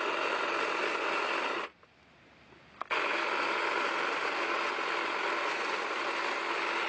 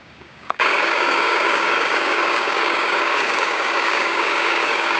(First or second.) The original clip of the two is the first